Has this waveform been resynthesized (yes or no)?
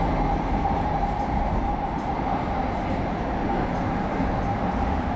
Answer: no